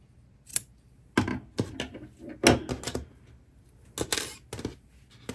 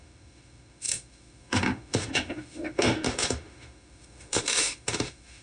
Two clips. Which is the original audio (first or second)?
first